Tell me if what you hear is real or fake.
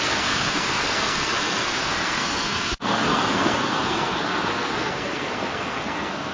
fake